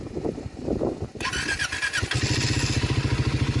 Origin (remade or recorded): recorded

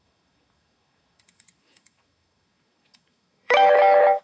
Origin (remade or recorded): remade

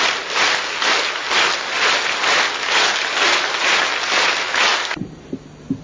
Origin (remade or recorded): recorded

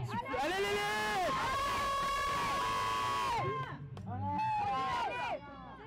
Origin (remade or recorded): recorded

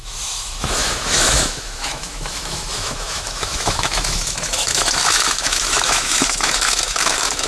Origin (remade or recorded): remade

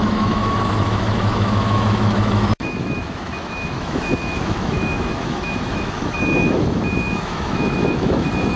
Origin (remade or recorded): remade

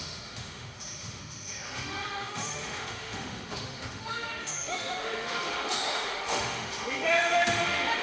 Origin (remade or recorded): remade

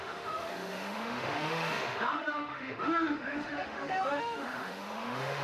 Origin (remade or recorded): remade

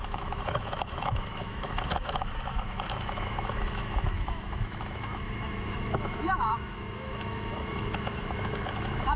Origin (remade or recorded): remade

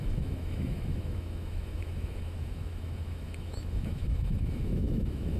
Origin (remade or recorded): remade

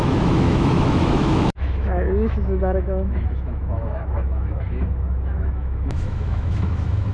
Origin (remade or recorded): remade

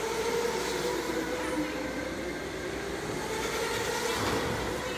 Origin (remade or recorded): recorded